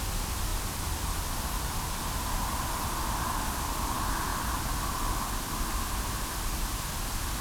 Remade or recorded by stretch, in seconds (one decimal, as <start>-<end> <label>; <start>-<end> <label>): 0.0-0.5 recorded; 0.5-2.0 remade; 2.0-4.3 recorded; 4.3-5.8 remade; 5.8-7.4 recorded